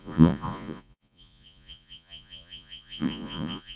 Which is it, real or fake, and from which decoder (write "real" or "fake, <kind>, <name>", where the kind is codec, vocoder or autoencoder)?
fake, vocoder, Vocos